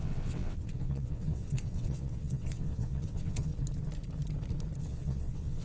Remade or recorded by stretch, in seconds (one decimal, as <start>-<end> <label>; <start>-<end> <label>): 0.0-3.5 remade; 3.5-4.8 recorded; 4.8-5.6 remade